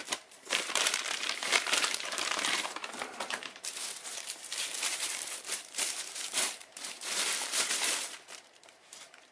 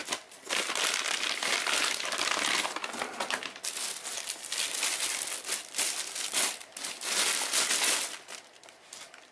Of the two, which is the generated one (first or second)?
first